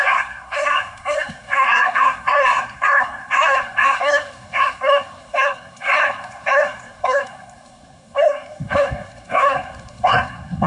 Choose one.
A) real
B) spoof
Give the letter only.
B